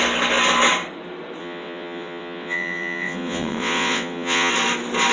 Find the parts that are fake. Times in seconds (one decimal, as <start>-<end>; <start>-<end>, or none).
1.4-4.5